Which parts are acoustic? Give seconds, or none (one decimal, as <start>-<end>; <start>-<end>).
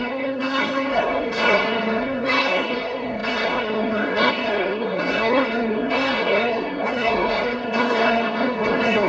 none